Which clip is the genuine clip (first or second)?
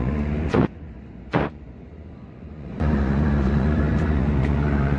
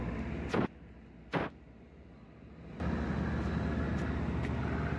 second